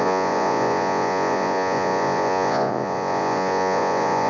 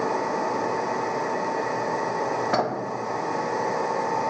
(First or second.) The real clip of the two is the second